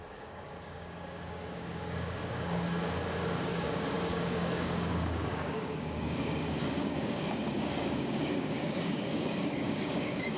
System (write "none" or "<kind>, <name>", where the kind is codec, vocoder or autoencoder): codec, DAC